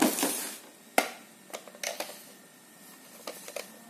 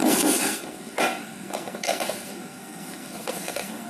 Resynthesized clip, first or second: second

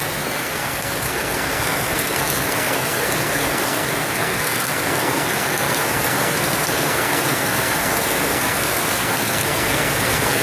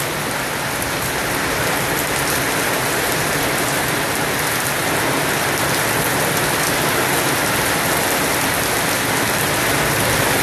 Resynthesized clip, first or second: first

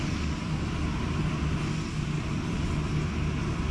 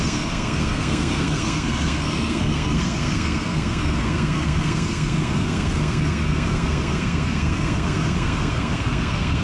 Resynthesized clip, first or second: second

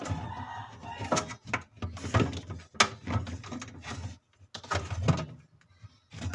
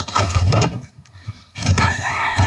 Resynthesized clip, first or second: second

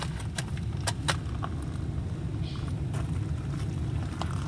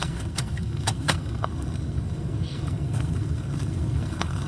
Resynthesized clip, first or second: second